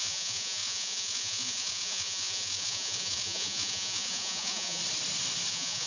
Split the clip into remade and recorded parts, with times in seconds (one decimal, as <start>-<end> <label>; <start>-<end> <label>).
0.0-4.8 remade; 4.8-5.5 recorded; 5.5-5.9 remade